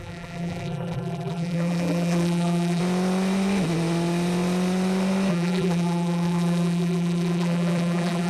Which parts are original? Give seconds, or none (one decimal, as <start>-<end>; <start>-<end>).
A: 2.8-5.3